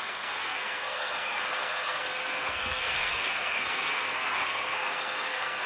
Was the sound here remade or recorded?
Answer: remade